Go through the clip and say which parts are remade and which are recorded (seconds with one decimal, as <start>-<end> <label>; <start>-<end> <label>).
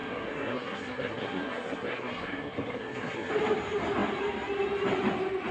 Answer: 0.0-3.3 remade; 3.3-5.5 recorded